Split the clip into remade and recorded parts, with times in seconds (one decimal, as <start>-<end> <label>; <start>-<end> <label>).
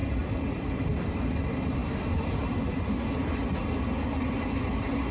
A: 0.0-5.1 recorded